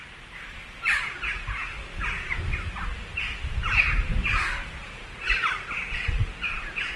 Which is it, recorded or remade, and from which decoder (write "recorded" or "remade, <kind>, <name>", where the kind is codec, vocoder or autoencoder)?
recorded